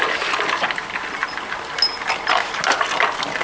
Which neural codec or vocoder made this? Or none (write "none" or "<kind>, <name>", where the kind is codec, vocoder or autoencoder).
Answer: none